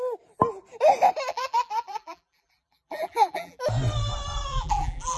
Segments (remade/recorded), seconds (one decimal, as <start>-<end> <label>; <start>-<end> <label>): 0.0-1.3 recorded; 1.3-3.6 remade; 3.6-4.5 recorded; 4.5-5.2 remade